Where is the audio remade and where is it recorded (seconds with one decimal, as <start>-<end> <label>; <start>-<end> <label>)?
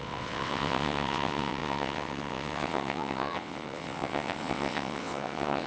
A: 0.0-5.7 remade